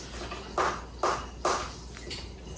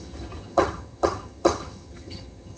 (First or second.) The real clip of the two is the first